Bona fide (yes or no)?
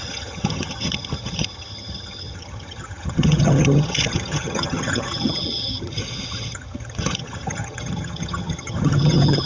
no